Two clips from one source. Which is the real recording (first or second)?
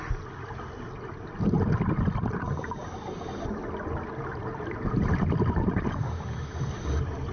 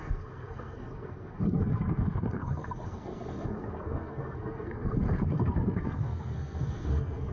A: first